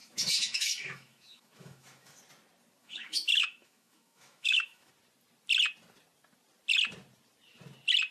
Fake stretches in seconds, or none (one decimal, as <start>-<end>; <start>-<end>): 0.0-2.2; 2.8-4.9